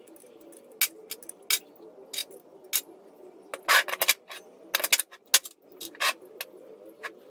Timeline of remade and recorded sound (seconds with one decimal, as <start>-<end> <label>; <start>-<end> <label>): 0.0-7.3 recorded